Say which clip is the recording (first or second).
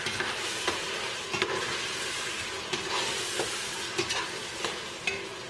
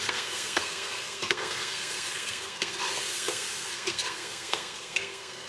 first